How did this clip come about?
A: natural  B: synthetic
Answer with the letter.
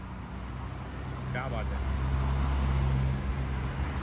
A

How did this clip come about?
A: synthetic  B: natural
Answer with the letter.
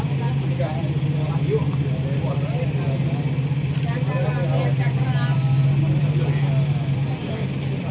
B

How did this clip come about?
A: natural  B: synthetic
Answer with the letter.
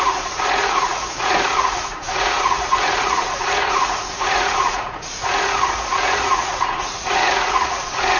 B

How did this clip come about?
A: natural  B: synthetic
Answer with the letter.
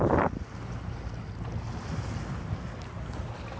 A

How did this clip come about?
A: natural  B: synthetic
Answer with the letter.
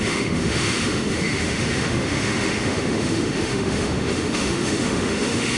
B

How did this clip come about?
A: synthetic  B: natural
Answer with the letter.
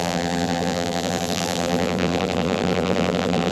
A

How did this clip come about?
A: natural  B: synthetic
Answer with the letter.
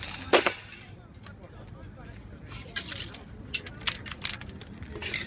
A